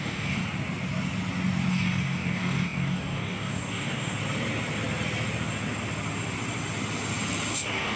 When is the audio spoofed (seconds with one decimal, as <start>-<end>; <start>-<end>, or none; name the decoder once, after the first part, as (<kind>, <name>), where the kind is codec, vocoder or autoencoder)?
0.0-0.4 (codec, DAC); 1.7-4.2; 7.5-8.0

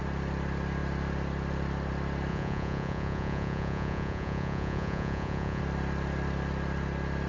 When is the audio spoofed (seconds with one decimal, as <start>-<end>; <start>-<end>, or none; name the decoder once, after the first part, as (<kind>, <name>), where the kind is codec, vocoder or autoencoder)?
2.3-5.6 (vocoder, Vocos)

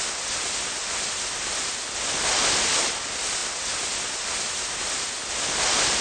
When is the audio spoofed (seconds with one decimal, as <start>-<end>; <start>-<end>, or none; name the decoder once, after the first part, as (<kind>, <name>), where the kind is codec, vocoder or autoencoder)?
none

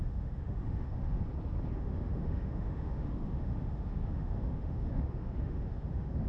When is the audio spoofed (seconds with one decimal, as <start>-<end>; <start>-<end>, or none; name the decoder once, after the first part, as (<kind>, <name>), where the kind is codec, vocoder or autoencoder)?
0.0-1.2 (autoencoder, DAC-VAE); 1.7-6.3

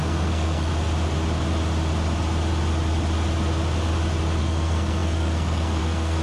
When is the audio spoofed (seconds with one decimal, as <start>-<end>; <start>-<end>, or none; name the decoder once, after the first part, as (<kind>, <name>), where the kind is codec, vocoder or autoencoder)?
0.0-0.7 (codec, SNAC); 4.4-6.2

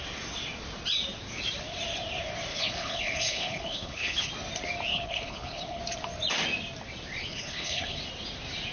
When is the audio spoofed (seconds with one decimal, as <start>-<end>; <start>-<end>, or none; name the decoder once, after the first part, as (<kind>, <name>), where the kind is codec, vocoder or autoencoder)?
2.5-4.3 (codec, HILCodec); 4.9-5.8; 7.2-8.0